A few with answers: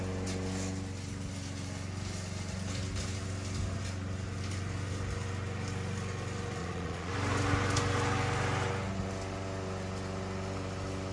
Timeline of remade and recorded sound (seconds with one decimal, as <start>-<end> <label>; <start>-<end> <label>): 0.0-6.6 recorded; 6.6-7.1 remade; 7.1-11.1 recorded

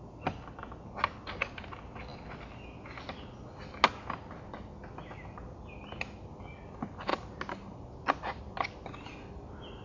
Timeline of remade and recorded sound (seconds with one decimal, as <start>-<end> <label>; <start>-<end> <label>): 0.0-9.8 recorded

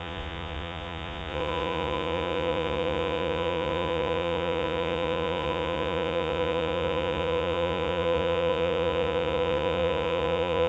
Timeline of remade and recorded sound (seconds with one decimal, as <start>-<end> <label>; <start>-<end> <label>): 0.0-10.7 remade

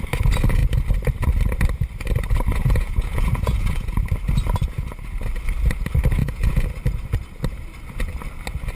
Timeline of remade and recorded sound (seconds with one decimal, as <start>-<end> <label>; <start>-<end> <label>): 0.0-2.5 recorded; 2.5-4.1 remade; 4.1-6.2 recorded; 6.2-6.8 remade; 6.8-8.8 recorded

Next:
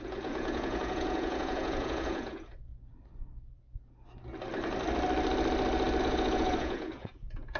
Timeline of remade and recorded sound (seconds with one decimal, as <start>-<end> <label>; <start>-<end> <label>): 0.0-2.7 remade; 2.7-6.0 recorded; 6.0-7.6 remade

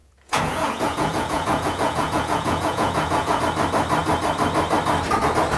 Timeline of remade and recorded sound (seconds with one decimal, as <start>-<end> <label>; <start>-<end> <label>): 0.0-3.4 remade; 3.4-5.6 recorded

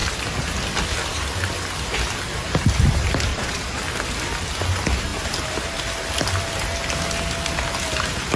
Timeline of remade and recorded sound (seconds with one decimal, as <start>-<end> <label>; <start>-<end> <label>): 0.0-3.3 recorded; 3.3-3.8 remade; 3.8-8.4 recorded

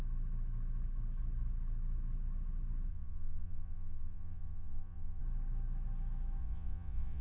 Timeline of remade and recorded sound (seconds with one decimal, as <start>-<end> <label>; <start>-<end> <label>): 0.0-2.9 recorded; 2.9-5.2 remade; 5.2-6.4 recorded; 6.4-7.2 remade